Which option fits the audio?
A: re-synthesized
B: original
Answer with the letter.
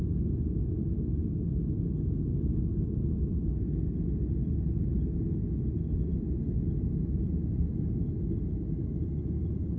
B